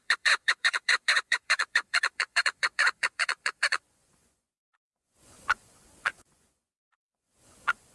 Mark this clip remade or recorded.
remade